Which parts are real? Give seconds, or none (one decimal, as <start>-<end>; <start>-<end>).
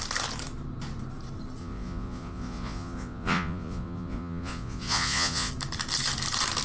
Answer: 0.0-1.6; 5.5-6.6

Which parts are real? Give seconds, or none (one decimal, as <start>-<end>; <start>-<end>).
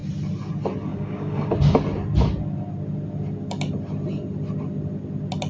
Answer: 0.0-0.9; 1.5-5.5